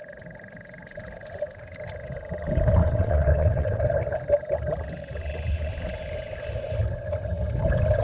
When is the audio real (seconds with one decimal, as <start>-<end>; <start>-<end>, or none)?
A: 0.0-2.8; 3.8-5.0; 5.7-8.0